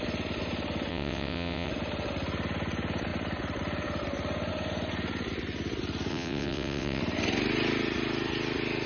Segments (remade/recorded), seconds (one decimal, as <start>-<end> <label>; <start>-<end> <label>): 0.0-0.9 recorded; 0.9-1.7 remade; 1.7-6.1 recorded; 6.1-7.0 remade; 7.0-8.9 recorded

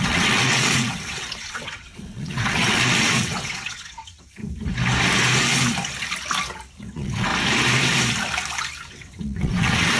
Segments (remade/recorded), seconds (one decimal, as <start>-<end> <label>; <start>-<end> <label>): 0.0-4.4 remade; 4.4-6.8 recorded; 6.8-7.3 remade; 7.3-8.9 recorded; 8.9-10.0 remade

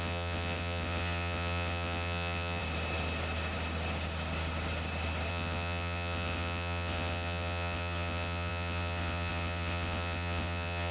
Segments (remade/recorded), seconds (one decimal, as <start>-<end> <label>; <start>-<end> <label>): 0.0-2.6 remade; 2.6-5.3 recorded; 5.3-10.9 remade

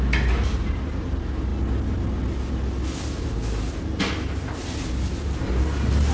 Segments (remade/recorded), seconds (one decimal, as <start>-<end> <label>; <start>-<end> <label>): 0.0-6.1 recorded

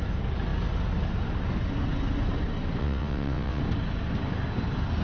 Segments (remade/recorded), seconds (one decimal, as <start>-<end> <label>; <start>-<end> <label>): 0.0-2.8 recorded; 2.8-3.6 remade; 3.6-5.0 recorded

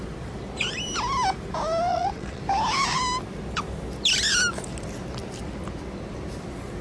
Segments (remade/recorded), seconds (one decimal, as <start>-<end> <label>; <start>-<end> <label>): 0.0-1.9 recorded; 1.9-2.4 remade; 2.4-6.8 recorded

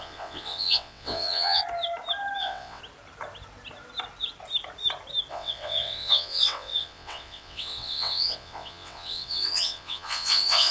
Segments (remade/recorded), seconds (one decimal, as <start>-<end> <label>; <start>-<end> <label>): 0.0-1.6 remade; 1.6-2.4 recorded; 2.4-2.8 remade; 2.8-5.3 recorded; 5.3-10.7 remade